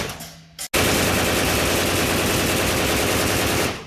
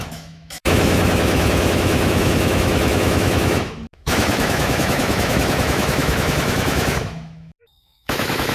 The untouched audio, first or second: first